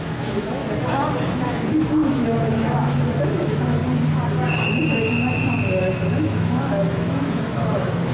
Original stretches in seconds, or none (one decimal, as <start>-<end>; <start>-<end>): 0.6-1.7; 3.8-5.8